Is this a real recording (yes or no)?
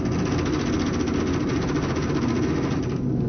yes